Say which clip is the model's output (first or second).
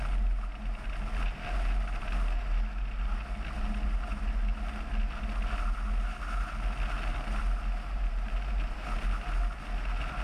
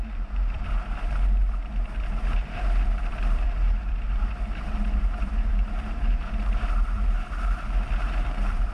second